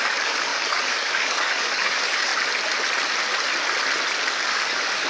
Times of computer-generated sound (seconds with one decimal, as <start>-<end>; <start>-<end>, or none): 0.0-2.3; 4.2-5.1